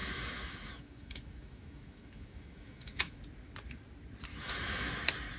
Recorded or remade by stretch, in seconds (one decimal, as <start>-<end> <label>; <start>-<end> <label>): 0.0-3.2 remade; 3.2-4.3 recorded; 4.3-4.9 remade; 4.9-5.4 recorded